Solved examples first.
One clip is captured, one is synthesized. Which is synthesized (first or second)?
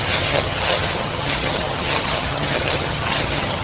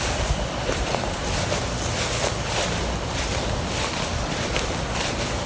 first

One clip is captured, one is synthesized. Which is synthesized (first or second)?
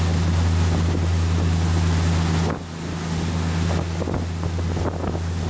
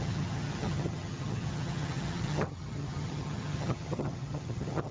second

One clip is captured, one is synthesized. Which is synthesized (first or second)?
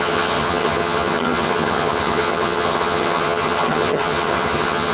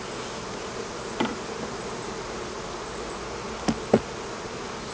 first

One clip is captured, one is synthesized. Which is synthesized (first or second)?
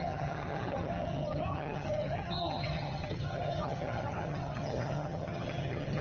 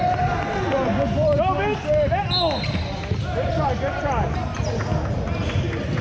first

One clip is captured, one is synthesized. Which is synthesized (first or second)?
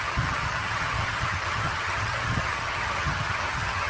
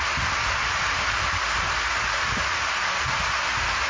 first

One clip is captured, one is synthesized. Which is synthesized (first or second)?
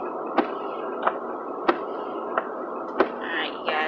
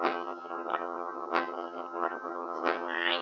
second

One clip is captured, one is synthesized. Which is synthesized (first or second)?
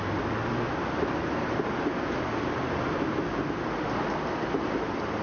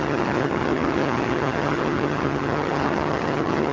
second